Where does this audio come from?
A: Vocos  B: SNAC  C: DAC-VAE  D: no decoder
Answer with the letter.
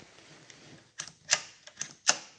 D